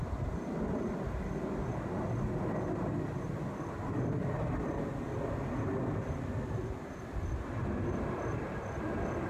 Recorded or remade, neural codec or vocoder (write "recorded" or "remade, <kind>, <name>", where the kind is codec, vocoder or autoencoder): recorded